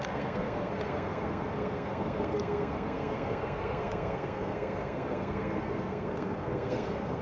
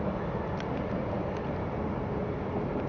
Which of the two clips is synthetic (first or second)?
first